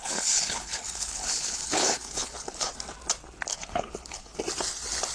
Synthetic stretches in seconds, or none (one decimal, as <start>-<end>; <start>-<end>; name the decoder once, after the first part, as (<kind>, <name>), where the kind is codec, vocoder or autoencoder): 0.0-2.7 (codec, HILCodec); 3.5-4.4